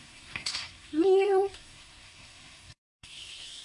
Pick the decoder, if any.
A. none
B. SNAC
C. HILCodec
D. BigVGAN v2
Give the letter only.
B